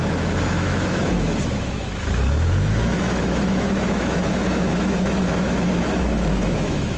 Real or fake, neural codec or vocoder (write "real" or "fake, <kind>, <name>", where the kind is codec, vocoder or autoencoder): fake, autoencoder, DAC-VAE